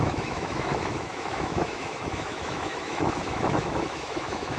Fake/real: fake